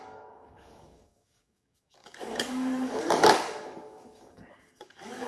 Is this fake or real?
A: fake